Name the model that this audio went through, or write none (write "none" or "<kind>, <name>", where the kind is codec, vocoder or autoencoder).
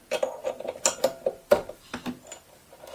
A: none